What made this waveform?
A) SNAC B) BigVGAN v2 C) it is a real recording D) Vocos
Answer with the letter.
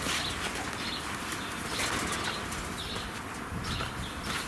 C